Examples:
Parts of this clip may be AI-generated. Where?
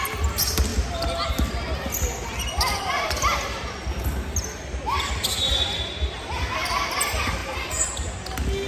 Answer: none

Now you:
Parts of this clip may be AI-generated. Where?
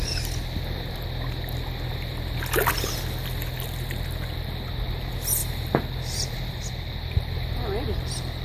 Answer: 5.4-6.7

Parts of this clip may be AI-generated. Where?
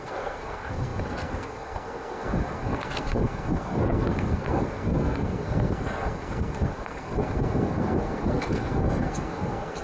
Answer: 0.0-9.8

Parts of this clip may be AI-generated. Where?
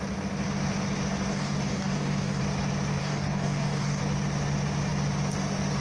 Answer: 1.3-2.4; 3.0-4.0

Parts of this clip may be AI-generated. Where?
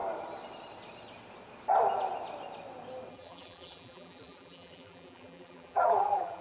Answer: 3.1-6.4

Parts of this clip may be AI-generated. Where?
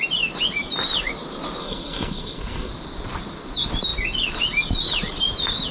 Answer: 1.6-2.7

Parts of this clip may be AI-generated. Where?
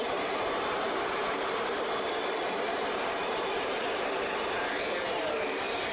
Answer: 0.0-5.9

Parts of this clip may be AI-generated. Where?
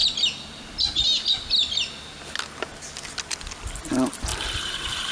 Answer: 4.3-5.1